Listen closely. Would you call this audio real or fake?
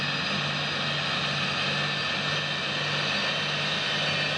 real